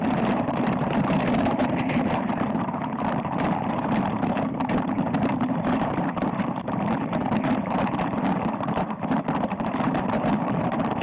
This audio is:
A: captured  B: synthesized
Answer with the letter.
B